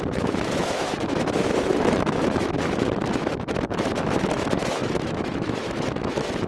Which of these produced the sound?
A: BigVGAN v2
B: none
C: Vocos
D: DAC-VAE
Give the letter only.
D